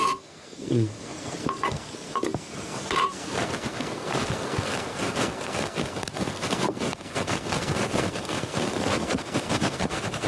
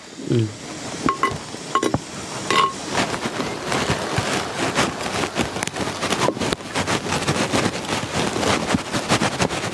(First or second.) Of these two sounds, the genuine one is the second